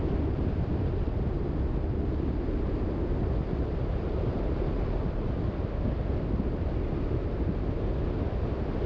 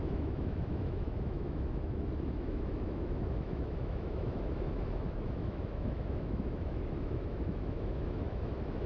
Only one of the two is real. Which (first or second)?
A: first